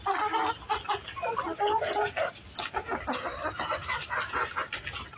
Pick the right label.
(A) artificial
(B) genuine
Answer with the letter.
B